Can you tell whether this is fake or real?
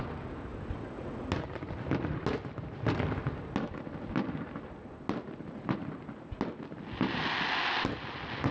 real